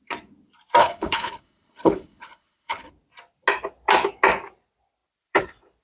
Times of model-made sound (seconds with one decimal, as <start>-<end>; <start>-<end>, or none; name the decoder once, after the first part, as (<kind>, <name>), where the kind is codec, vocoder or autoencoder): 0.8-2.9 (codec, HILCodec)